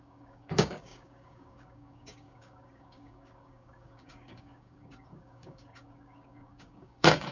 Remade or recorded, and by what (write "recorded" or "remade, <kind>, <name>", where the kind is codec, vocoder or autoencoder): remade, codec, DAC